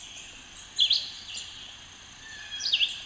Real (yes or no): yes